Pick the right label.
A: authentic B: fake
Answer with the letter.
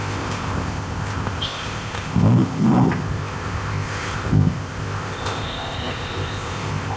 B